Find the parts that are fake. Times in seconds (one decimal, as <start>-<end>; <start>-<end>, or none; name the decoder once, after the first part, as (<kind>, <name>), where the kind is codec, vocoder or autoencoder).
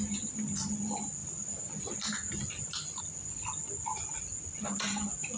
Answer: none